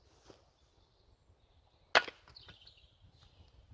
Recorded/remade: recorded